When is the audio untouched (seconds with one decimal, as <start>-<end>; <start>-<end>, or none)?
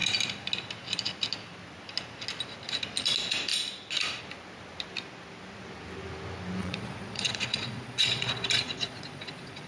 0.0-6.6